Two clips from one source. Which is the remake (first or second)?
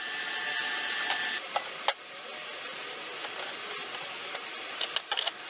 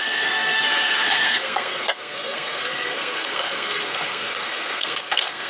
second